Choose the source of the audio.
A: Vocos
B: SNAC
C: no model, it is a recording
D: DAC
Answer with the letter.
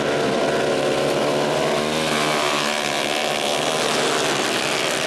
C